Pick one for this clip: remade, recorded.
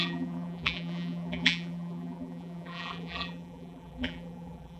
remade